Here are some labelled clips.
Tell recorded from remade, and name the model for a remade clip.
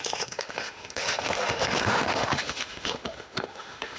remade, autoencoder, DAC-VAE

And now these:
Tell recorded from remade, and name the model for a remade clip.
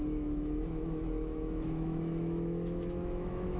remade, autoencoder, DAC-VAE